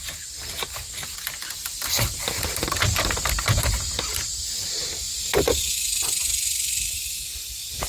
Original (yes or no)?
yes